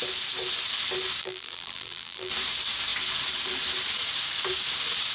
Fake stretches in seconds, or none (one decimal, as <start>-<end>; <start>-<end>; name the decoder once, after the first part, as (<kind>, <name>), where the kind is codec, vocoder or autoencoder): 1.2-2.3 (vocoder, BigVGAN v2)